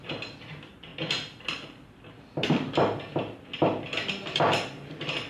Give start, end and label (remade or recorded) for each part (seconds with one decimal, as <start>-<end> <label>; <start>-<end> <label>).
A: 0.0-5.3 recorded